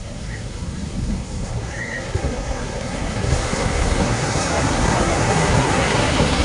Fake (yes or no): yes